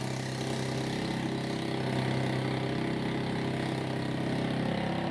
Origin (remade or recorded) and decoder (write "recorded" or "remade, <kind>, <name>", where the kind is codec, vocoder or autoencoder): recorded